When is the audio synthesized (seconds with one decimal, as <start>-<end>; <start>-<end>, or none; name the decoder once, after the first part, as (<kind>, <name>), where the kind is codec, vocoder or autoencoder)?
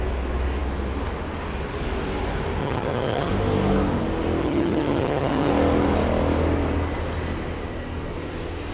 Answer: 2.6-3.3 (vocoder, HiFi-GAN); 4.4-5.5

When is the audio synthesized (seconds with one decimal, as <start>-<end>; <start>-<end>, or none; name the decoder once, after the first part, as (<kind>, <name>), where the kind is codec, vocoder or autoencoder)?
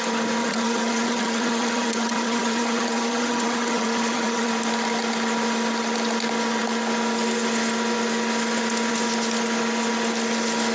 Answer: 0.4-4.5 (vocoder, HiFi-GAN)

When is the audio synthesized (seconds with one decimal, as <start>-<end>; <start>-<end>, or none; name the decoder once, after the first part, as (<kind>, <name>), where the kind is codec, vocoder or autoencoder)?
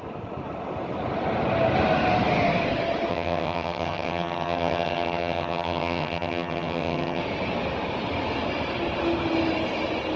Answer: 3.1-7.2 (vocoder, HiFi-GAN)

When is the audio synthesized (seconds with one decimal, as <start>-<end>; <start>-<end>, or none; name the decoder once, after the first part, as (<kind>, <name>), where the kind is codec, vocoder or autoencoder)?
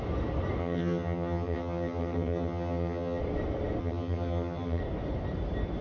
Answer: 0.6-3.2 (vocoder, HiFi-GAN); 3.8-4.8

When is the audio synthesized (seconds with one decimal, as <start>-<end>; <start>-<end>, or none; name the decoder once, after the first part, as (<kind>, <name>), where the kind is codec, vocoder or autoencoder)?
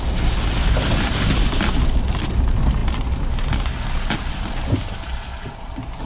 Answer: none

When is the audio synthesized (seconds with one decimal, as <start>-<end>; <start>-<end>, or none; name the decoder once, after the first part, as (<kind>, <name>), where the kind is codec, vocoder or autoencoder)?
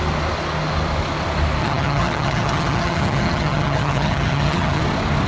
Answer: 1.6-4.8 (vocoder, HiFi-GAN)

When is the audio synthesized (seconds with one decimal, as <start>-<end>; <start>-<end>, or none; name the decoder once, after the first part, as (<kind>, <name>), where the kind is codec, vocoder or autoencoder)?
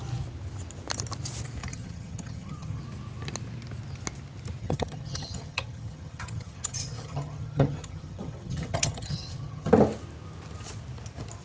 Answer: 1.6-2.8 (vocoder, HiFi-GAN); 4.6-9.7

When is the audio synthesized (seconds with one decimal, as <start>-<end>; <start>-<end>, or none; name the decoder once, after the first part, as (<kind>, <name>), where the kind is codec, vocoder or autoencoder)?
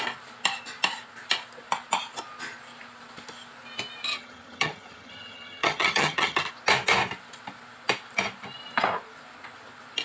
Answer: 4.1-6.5 (vocoder, HiFi-GAN)